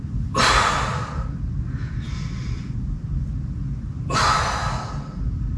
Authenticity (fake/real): real